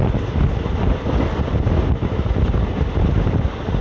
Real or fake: real